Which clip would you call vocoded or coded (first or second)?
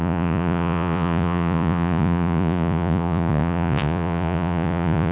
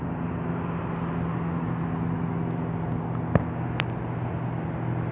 first